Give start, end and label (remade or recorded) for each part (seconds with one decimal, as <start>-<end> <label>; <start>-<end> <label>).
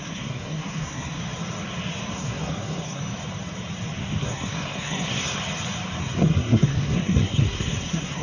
0.0-1.2 remade; 1.2-2.1 recorded; 2.1-3.0 remade; 3.0-4.2 recorded; 4.2-5.4 remade; 5.4-6.0 recorded; 6.0-8.2 remade